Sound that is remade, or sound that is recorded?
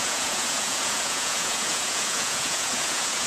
remade